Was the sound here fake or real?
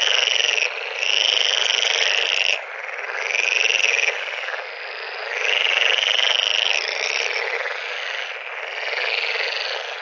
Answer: real